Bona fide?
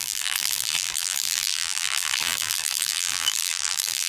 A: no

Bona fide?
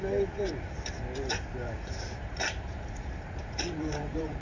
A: no